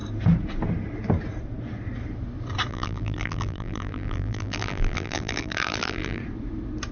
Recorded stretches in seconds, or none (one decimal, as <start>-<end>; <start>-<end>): 0.0-2.7; 6.2-6.9